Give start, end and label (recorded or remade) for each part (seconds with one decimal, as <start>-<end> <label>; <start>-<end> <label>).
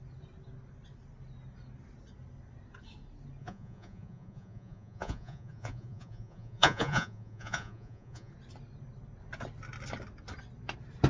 0.0-3.4 recorded; 3.4-8.3 remade; 8.3-11.1 recorded